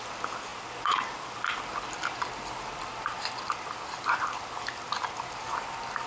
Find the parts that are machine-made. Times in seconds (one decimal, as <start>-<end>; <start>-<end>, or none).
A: none